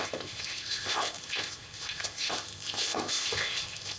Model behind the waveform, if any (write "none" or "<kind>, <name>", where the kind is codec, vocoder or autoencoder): codec, ZipCodec